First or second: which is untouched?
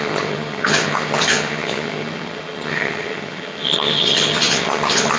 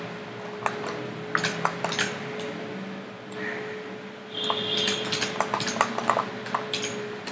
second